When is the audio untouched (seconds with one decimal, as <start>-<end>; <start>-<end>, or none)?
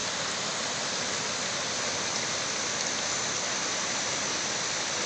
0.0-5.1